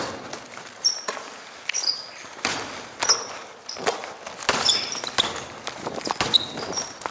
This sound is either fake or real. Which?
real